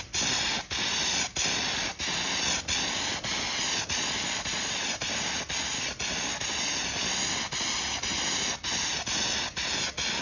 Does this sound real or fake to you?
real